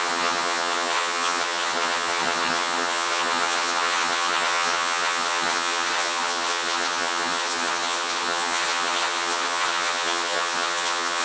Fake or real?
fake